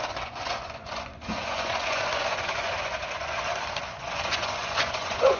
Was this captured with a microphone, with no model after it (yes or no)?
no